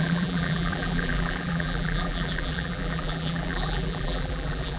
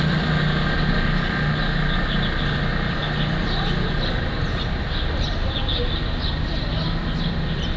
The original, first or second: second